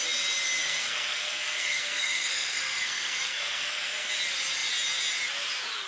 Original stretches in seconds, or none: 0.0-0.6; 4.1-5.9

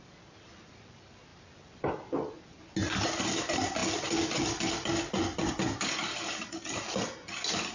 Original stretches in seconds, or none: 0.0-7.7